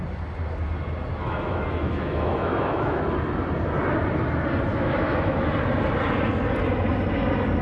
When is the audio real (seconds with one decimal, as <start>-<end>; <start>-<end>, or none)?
0.0-1.1; 3.0-4.7; 5.5-7.6